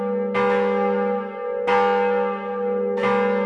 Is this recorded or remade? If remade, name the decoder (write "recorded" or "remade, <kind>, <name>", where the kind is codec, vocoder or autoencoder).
recorded